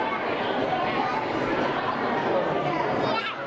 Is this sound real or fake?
real